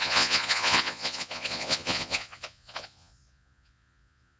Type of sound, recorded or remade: remade